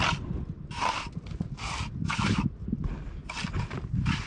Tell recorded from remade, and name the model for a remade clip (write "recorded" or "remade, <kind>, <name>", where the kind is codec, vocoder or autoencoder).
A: recorded